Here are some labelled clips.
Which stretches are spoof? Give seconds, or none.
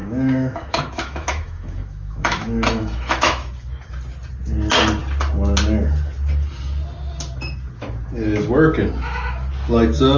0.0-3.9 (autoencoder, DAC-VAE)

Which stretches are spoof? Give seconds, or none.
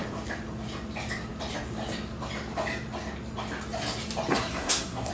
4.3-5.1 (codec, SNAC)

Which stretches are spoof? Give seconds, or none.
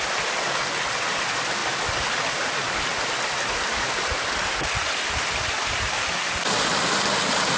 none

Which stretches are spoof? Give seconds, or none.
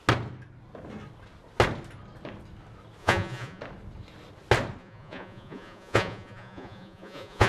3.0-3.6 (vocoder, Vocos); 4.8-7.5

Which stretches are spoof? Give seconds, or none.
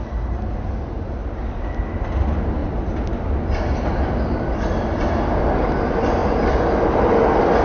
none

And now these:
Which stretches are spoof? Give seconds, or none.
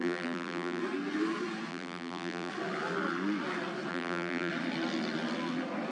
0.0-0.8 (vocoder, BigVGAN v2); 1.7-2.5; 3.9-4.5